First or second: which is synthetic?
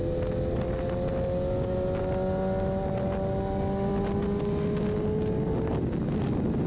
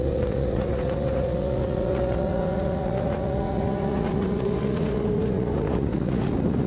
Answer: second